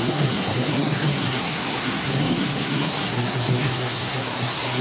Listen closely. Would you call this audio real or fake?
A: fake